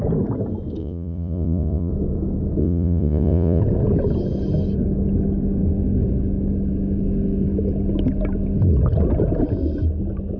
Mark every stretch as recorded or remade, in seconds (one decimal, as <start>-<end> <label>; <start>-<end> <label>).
0.0-0.8 recorded; 0.8-1.9 remade; 1.9-2.6 recorded; 2.6-3.6 remade; 3.6-10.4 recorded